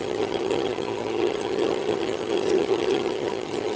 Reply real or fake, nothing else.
fake